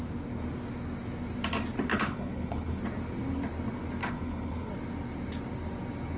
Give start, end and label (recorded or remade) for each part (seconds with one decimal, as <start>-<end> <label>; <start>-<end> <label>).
0.0-1.9 recorded; 1.9-2.8 remade; 2.8-4.0 recorded; 4.0-4.7 remade; 4.7-6.2 recorded